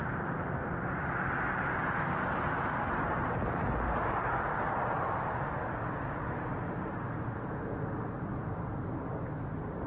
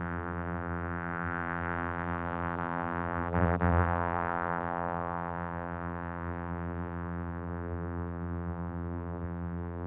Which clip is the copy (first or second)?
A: second